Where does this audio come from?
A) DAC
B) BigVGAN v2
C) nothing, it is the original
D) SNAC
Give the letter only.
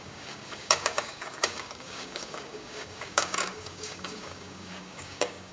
A